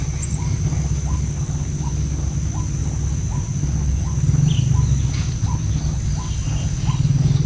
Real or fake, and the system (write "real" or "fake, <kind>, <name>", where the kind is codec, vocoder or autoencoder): real